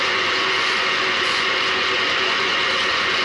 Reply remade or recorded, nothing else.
remade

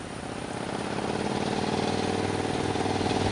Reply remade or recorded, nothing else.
recorded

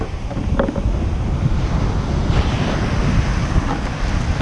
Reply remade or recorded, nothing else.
recorded